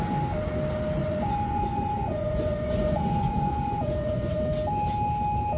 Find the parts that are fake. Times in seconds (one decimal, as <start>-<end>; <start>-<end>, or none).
1.0-4.4